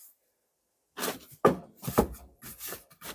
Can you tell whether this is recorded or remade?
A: recorded